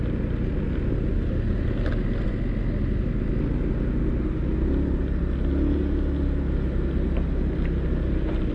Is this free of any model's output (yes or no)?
yes